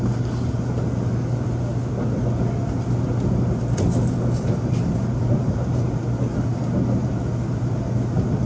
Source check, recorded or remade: recorded